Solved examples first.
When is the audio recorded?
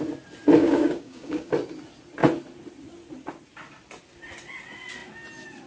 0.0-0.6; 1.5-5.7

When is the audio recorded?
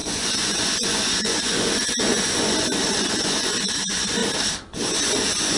4.2-4.8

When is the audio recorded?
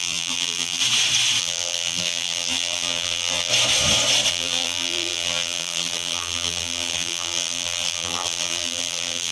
0.8-1.4; 3.5-4.3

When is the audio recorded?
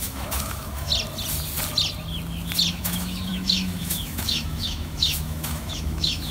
0.9-2.7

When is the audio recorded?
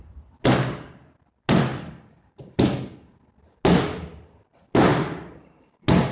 0.0-1.7; 2.3-4.9; 5.5-6.1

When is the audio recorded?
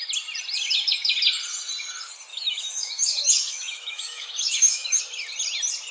0.0-2.3; 5.0-5.9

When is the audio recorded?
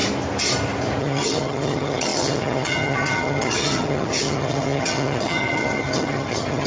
0.0-1.0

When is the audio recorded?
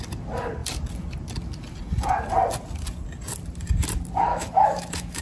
0.0-4.3